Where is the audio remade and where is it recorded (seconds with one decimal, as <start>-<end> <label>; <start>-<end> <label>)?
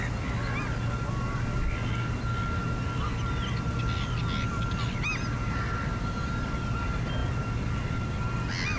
0.0-8.8 recorded